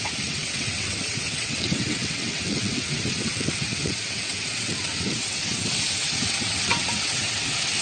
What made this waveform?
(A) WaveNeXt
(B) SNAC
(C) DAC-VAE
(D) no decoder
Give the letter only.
A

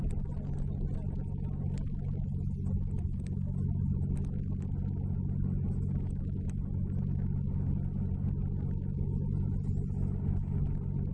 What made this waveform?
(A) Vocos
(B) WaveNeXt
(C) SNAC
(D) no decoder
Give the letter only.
D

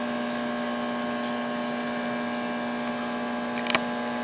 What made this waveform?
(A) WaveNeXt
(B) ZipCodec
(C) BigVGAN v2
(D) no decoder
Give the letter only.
D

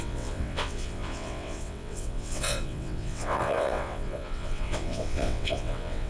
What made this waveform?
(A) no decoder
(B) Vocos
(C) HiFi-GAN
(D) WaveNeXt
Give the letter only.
D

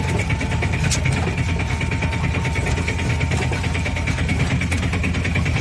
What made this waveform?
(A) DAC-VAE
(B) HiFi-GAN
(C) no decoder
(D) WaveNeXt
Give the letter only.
C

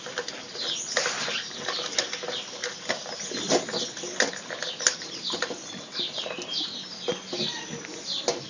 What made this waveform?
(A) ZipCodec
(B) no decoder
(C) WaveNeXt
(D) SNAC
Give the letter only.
B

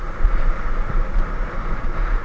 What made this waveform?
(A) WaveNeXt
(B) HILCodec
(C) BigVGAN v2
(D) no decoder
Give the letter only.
D